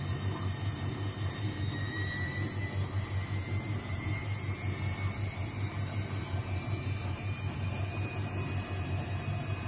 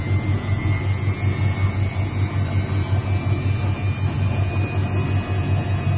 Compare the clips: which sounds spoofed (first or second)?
first